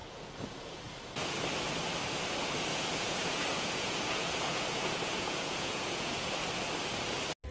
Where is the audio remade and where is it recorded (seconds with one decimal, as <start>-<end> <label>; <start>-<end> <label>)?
0.0-0.9 remade; 0.9-2.7 recorded; 2.7-6.3 remade; 6.3-7.5 recorded

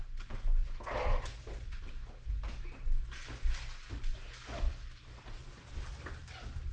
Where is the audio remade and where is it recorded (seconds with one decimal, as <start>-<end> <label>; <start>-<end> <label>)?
0.0-6.7 recorded

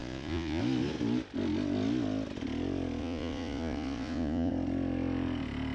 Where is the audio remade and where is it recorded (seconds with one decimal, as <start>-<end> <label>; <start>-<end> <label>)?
0.0-0.6 remade; 0.6-3.0 recorded; 3.0-4.5 remade; 4.5-5.7 recorded

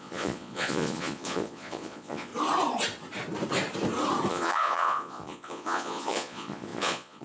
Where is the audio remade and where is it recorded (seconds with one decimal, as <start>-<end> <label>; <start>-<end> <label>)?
0.0-2.3 remade; 2.3-4.3 recorded; 4.3-7.2 remade

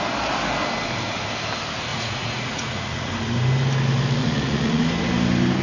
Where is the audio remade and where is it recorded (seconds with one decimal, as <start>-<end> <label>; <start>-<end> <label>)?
0.0-1.9 recorded; 1.9-3.1 remade; 3.1-4.2 recorded; 4.2-4.8 remade; 4.8-5.6 recorded

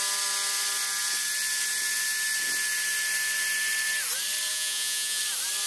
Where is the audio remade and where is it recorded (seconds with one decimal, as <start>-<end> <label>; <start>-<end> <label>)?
0.0-4.5 recorded; 4.5-5.2 remade; 5.2-5.7 recorded

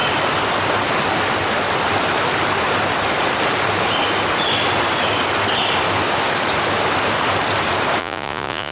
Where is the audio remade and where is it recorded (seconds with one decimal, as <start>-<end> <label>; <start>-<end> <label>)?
0.0-8.0 recorded; 8.0-8.7 remade